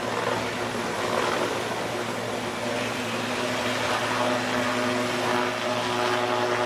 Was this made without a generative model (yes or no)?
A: yes